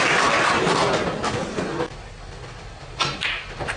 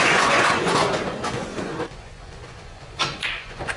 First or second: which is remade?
second